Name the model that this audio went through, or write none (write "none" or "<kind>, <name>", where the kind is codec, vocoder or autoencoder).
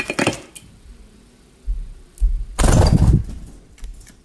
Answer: none